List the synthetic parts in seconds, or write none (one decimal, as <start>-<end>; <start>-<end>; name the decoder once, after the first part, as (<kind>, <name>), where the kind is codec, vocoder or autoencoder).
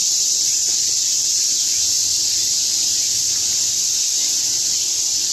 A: none